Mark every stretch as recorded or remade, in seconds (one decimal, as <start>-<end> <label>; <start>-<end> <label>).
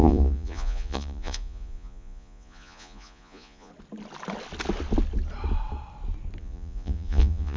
0.0-3.7 remade; 3.7-6.4 recorded; 6.4-7.6 remade